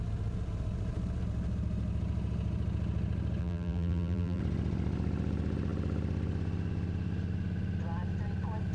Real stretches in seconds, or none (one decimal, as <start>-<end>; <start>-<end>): 0.0-3.4; 4.4-8.7